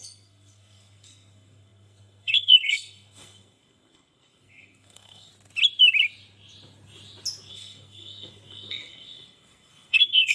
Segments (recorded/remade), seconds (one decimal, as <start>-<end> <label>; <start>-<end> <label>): 0.0-5.3 remade; 5.3-7.5 recorded; 7.5-10.3 remade